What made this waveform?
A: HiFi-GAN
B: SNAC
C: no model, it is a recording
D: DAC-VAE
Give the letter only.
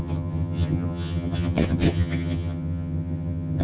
A